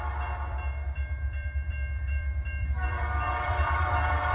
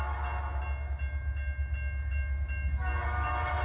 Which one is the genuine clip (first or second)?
second